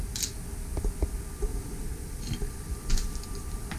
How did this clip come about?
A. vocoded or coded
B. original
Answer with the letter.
B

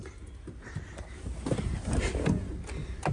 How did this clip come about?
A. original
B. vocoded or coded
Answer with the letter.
A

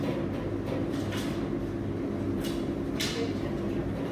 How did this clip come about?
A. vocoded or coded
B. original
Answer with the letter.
B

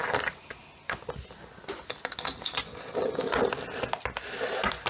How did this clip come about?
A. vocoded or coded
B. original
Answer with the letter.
B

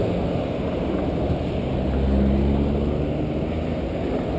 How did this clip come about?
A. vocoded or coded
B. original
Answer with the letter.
B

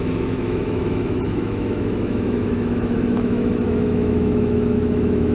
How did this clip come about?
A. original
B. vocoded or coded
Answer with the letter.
B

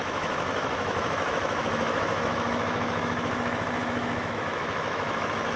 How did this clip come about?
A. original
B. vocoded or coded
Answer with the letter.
B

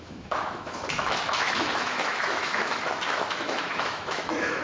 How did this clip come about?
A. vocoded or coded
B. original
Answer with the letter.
A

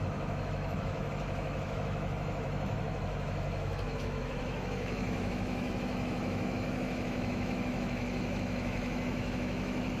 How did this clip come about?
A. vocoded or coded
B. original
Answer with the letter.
A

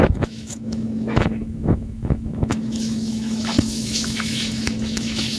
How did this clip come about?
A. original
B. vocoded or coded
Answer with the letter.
B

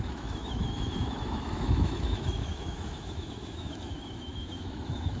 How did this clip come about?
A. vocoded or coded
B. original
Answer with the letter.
A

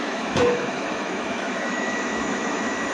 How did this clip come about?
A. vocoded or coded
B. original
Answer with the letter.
A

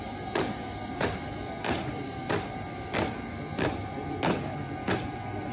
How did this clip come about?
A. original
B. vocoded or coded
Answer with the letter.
A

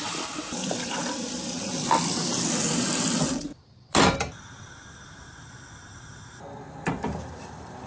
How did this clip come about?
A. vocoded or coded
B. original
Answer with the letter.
B